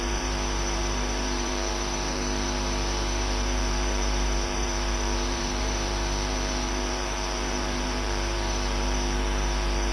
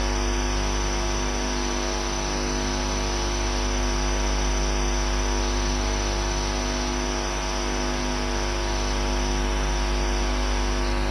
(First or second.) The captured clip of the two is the second